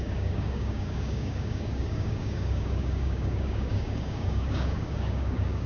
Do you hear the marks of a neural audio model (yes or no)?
yes